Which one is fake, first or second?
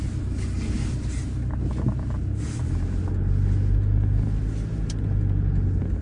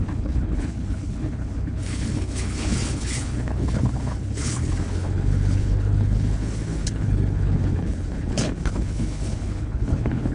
second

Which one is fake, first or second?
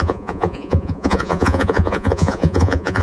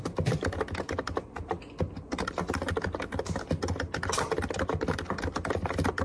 first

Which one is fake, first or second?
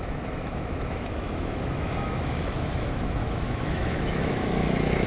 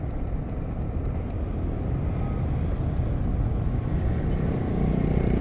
first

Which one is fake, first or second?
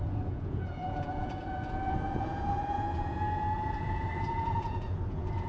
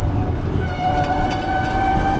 first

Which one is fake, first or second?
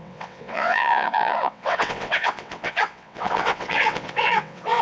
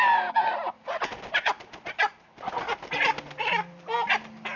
first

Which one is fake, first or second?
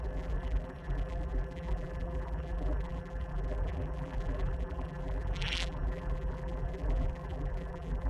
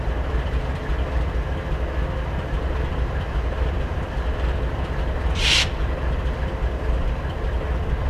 first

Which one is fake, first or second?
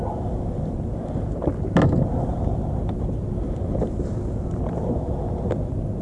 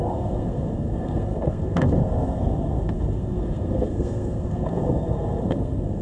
second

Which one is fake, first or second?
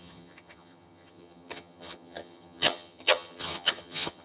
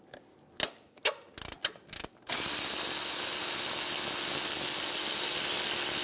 first